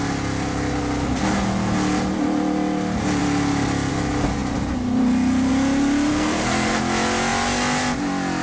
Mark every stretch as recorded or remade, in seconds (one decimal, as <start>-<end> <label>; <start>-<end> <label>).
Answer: 0.0-6.1 recorded; 6.1-6.8 remade; 6.8-8.4 recorded